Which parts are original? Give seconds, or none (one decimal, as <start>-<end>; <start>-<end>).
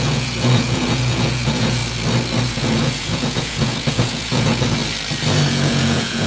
1.8-2.4; 4.8-5.5